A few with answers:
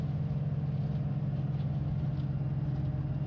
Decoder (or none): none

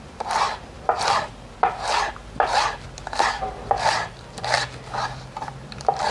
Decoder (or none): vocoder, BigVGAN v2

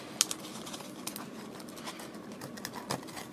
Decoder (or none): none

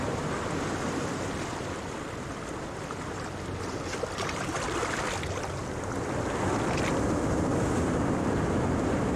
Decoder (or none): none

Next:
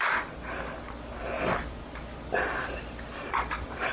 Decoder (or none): vocoder, BigVGAN v2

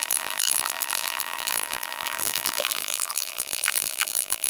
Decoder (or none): vocoder, BigVGAN v2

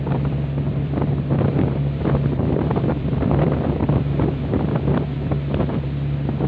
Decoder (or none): vocoder, BigVGAN v2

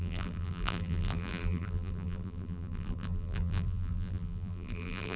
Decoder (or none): vocoder, BigVGAN v2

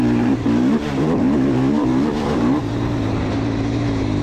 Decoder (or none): vocoder, BigVGAN v2